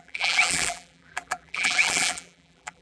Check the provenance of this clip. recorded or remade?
remade